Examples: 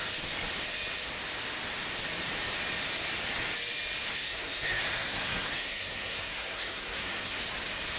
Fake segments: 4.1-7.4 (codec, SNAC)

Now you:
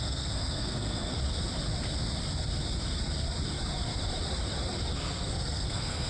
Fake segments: 0.0-1.2 (codec, SNAC); 4.9-6.1

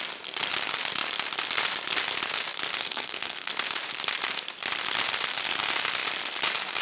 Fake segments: 2.8-3.5 (codec, SNAC)

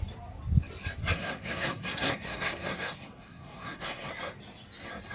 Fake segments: 1.0-4.1 (codec, SNAC)

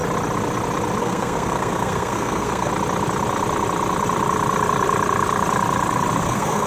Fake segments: 1.0-2.7 (codec, SNAC); 6.2-6.7

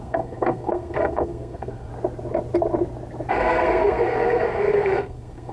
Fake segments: 0.0-1.9 (codec, SNAC); 3.3-5.5